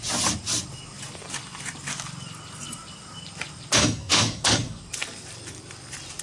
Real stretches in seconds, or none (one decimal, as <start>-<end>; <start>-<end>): 0.0-3.8; 4.8-6.2